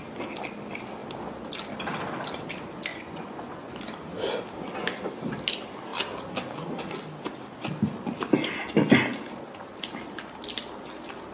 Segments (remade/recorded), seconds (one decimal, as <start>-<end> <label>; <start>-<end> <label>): 0.0-2.9 recorded; 2.9-3.7 remade; 3.7-11.3 recorded